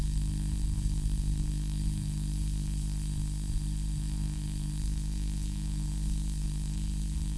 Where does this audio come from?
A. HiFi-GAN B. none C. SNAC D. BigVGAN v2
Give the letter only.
C